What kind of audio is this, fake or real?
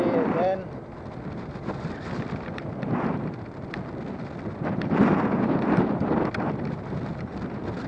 fake